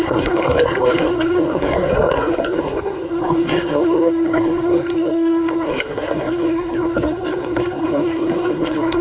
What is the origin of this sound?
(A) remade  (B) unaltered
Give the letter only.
A